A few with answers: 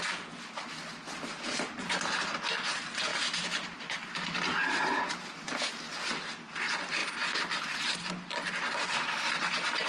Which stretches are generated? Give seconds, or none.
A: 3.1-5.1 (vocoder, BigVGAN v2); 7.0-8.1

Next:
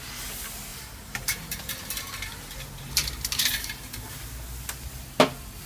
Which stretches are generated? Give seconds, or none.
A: 0.7-4.1 (vocoder, BigVGAN v2)

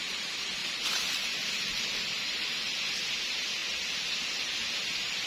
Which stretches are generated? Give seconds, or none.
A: 0.6-2.6 (vocoder, BigVGAN v2)

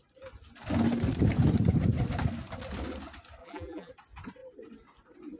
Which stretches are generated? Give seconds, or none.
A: 3.4-3.9 (vocoder, BigVGAN v2)